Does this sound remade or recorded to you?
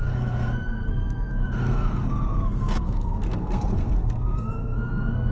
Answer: remade